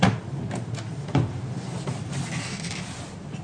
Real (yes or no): yes